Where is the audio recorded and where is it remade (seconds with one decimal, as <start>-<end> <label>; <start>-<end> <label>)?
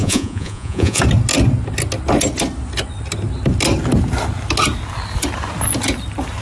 0.0-1.0 remade; 1.0-6.4 recorded